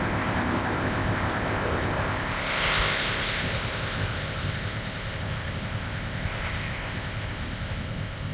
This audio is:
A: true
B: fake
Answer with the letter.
B